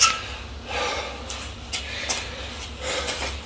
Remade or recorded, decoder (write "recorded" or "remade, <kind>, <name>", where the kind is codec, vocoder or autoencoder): recorded